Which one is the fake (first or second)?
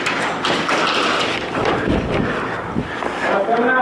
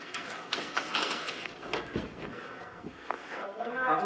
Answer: second